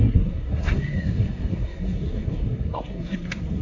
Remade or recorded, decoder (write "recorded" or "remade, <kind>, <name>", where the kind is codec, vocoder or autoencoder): remade, codec, SNAC